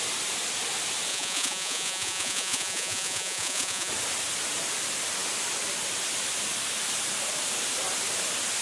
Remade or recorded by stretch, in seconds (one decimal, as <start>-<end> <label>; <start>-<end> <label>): 0.0-1.1 recorded; 1.1-3.9 remade; 3.9-8.6 recorded